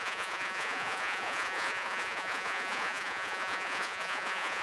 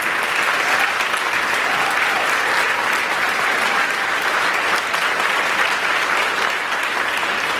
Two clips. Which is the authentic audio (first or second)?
second